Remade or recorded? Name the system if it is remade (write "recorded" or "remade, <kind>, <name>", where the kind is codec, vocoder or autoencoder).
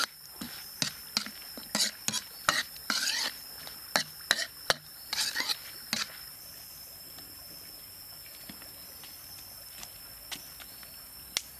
recorded